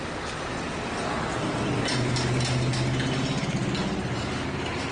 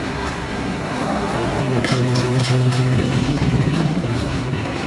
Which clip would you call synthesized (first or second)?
second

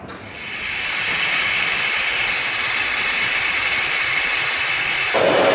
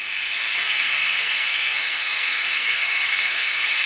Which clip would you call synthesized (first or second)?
second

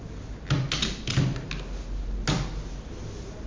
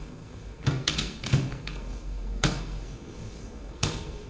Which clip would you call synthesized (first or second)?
second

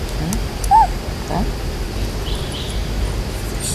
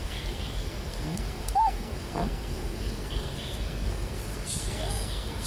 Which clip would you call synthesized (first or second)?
second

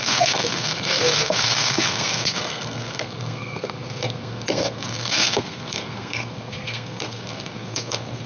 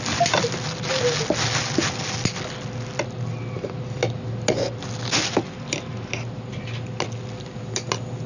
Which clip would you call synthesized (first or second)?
first